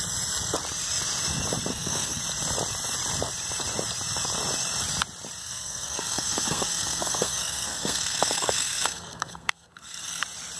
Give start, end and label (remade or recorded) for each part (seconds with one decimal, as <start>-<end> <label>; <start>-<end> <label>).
0.0-1.7 recorded; 1.7-2.2 remade; 2.2-5.4 recorded; 5.4-10.2 remade; 10.2-10.6 recorded